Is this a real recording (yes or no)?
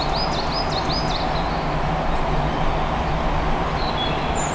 yes